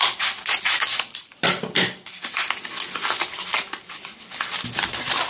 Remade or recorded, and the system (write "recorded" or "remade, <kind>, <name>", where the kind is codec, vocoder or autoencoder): remade, vocoder, BigVGAN v2